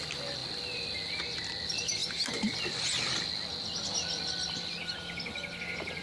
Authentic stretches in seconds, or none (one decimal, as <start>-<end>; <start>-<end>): 0.0-6.0